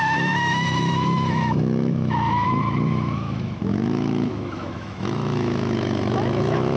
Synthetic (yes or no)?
yes